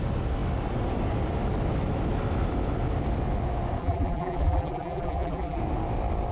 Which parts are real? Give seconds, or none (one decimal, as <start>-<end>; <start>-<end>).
0.0-3.8; 5.6-6.3